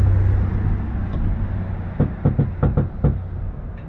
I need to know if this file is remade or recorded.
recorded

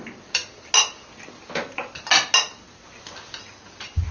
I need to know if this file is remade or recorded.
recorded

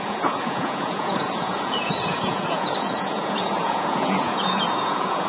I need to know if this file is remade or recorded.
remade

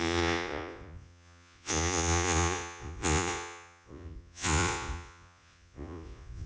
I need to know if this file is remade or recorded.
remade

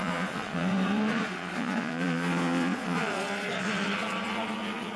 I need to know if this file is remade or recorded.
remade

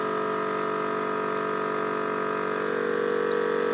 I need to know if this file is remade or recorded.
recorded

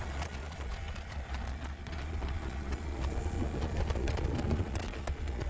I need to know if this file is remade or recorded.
remade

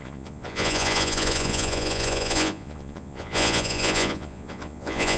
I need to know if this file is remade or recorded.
remade